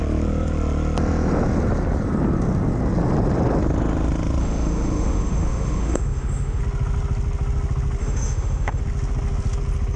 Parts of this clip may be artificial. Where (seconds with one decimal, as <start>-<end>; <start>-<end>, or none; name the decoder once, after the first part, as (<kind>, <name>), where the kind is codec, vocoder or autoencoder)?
4.4-6.6 (autoencoder, DAC-VAE); 8.0-8.8